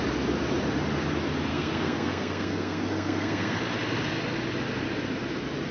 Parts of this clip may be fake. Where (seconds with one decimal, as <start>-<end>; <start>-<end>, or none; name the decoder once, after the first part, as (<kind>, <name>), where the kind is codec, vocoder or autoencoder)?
1.5-3.6 (codec, SNAC)